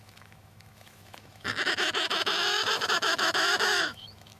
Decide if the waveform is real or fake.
fake